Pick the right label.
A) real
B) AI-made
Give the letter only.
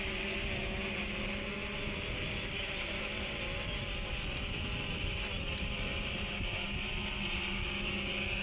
A